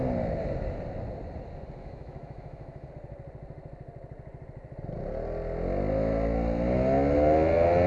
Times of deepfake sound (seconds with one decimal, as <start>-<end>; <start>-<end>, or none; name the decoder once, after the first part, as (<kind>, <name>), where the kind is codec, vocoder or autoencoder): 1.8-2.9 (autoencoder, DAC-VAE)